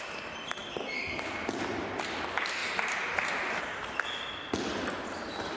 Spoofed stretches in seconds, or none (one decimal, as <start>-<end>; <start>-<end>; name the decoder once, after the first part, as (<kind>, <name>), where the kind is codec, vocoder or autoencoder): 2.6-3.6 (vocoder, BigVGAN v2)